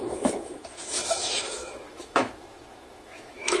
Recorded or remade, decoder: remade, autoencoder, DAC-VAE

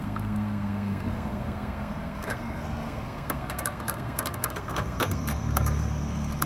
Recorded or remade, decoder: remade, codec, SNAC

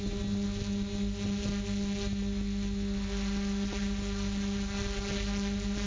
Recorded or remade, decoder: recorded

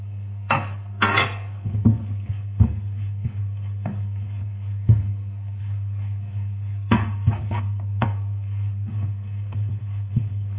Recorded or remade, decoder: remade, codec, SNAC